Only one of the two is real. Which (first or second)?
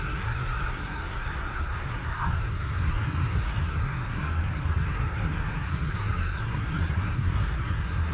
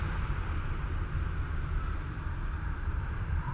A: second